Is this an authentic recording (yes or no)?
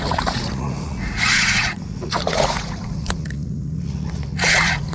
no